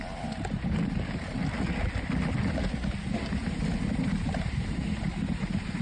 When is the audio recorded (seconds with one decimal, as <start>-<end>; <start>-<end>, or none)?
1.4-3.9